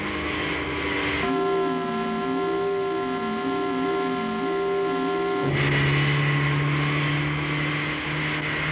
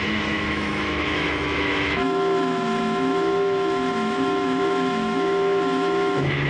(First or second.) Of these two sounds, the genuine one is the first